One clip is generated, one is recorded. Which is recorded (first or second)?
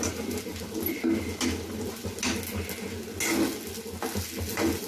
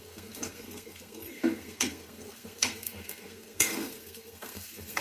first